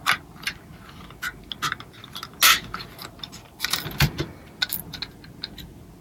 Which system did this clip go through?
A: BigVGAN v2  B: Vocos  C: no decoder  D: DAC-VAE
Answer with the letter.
C